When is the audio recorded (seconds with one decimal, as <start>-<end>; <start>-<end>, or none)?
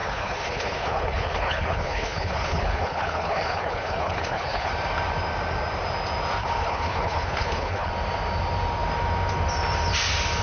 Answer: 4.7-6.4; 7.9-10.4